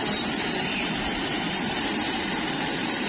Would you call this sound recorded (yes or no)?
no